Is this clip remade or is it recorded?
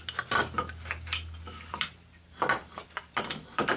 recorded